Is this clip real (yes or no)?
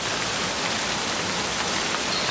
no